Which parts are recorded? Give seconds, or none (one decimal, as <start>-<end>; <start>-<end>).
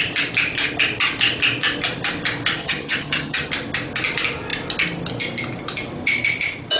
0.0-2.6; 3.5-6.8